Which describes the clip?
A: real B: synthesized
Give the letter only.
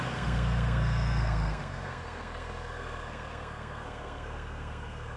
B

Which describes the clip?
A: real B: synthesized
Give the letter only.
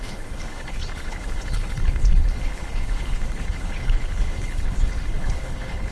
B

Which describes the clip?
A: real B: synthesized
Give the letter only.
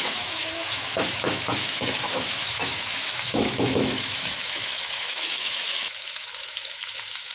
B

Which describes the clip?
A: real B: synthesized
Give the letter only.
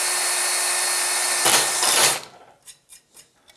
A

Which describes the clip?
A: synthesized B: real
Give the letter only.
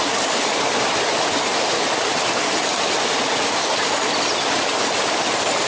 B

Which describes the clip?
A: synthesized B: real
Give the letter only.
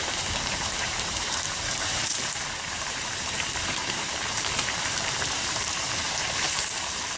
A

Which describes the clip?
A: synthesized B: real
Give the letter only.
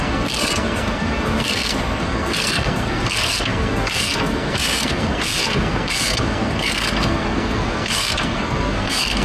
A